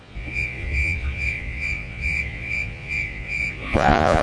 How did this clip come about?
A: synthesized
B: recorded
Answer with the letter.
A